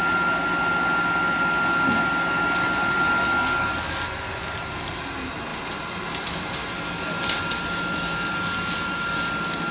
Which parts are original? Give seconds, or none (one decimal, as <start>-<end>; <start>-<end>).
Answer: 0.0-9.7